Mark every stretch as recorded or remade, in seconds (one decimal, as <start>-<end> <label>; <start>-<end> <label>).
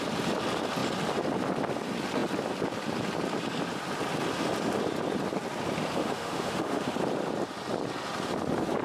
0.0-6.0 recorded; 6.0-6.9 remade; 6.9-8.8 recorded